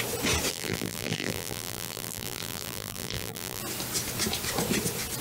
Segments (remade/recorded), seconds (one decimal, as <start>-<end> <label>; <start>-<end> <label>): 0.0-0.5 recorded; 0.5-3.6 remade; 3.6-5.2 recorded